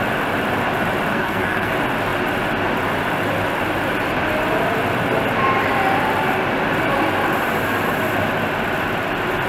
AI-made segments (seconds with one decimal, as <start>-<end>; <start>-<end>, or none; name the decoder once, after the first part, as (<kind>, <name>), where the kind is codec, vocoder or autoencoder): 1.1-1.7 (codec, SNAC)